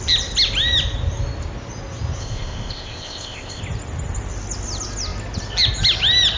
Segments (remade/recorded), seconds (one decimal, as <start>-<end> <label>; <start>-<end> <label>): 0.0-2.2 recorded; 2.2-3.6 remade; 3.6-6.4 recorded